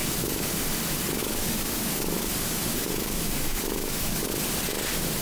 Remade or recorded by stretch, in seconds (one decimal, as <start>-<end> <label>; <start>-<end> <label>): 0.0-0.5 remade; 0.5-1.2 recorded; 1.2-4.3 remade; 4.3-5.2 recorded